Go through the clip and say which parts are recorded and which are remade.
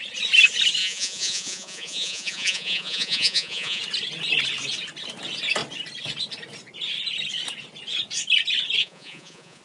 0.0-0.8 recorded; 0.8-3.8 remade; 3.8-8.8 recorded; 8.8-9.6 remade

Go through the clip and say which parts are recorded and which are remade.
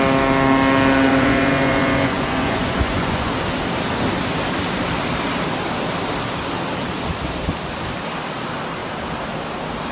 0.0-1.1 recorded; 1.1-3.3 remade; 3.3-9.9 recorded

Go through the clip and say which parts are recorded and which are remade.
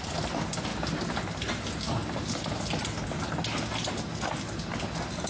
0.0-5.3 recorded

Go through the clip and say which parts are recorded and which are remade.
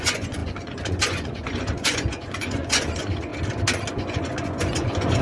0.0-3.3 remade; 3.3-3.9 recorded; 3.9-5.2 remade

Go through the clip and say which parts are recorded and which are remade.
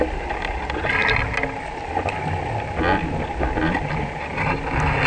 0.0-5.1 recorded